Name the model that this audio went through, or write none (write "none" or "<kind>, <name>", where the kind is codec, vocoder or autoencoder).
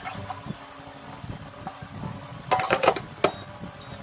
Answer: none